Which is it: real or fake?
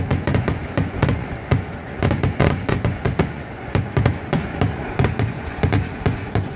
fake